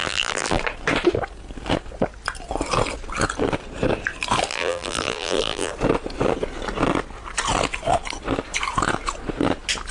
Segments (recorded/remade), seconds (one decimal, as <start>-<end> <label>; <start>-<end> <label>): 0.0-0.6 remade; 0.6-4.5 recorded; 4.5-5.7 remade; 5.7-9.9 recorded